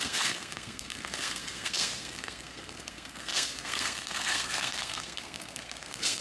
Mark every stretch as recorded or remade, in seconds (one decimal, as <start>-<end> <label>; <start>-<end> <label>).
0.0-6.2 remade